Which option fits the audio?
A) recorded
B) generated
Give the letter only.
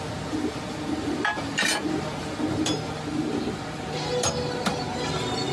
A